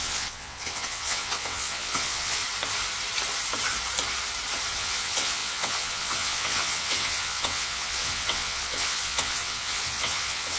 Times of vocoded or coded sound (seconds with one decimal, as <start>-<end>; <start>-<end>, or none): 0.0-2.4; 4.7-10.6

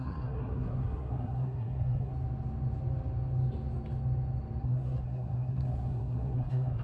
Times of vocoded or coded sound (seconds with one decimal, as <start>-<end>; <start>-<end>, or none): 0.0-2.1; 4.6-6.8

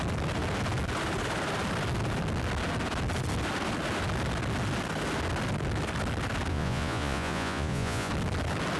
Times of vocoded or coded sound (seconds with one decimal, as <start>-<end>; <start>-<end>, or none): 6.5-8.1

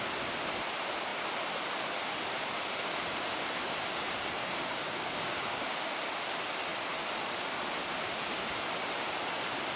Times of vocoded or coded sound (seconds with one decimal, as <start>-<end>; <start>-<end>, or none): 4.4-6.0

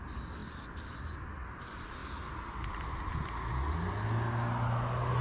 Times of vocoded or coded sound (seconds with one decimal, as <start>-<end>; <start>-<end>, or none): none